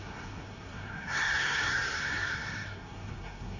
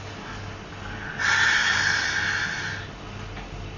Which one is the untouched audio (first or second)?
second